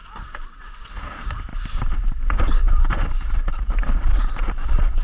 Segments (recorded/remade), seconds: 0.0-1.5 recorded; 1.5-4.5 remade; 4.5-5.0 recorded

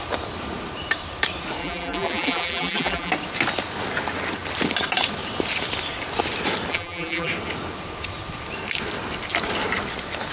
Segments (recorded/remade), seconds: 0.0-1.6 recorded; 1.6-3.1 remade; 3.1-6.7 recorded; 6.7-7.3 remade; 7.3-10.3 recorded

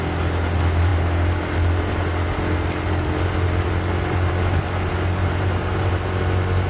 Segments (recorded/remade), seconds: 0.0-5.2 recorded; 5.2-5.9 remade; 5.9-6.7 recorded

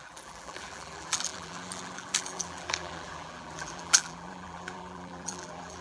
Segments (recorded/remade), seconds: 0.0-5.8 remade